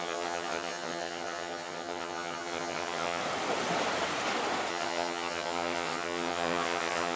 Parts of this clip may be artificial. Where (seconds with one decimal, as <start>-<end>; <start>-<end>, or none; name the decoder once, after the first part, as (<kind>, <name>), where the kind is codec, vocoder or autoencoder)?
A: 0.0-3.2 (vocoder, HiFi-GAN); 4.7-7.2